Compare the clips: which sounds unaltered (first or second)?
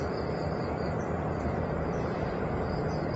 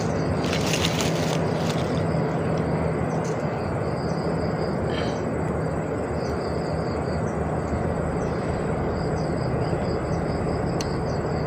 second